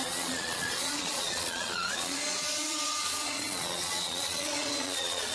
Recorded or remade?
remade